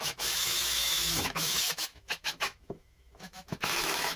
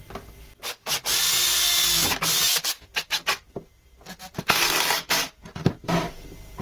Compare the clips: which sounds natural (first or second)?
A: second